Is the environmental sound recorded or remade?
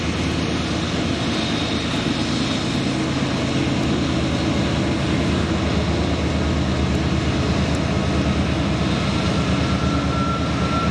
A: recorded